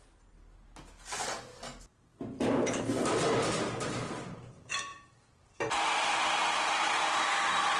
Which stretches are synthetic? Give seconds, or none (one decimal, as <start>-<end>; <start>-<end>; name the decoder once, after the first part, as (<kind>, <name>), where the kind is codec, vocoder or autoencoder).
none